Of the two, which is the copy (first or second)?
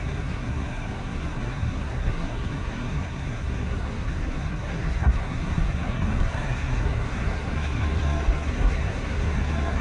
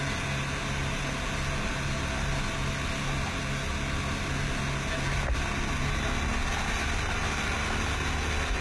first